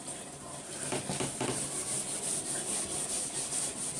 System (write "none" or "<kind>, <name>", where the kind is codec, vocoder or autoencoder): none